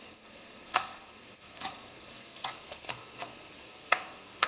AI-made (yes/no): yes